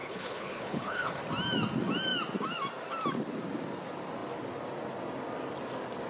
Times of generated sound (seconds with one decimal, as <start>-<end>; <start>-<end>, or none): 0.0-1.2